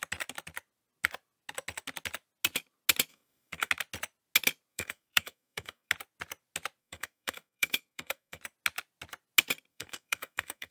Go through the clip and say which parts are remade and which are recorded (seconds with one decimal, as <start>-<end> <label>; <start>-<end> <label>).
0.0-3.1 recorded; 3.1-3.7 remade; 3.7-4.7 recorded; 4.7-5.9 remade; 5.9-6.8 recorded; 6.8-8.4 remade; 8.4-9.7 recorded; 9.7-10.7 remade